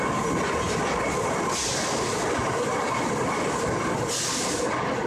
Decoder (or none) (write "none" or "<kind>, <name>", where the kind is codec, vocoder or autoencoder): none